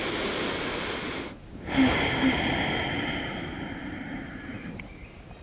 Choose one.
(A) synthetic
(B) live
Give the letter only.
A